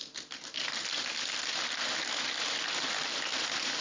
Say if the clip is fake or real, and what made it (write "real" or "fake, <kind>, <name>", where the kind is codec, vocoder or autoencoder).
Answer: real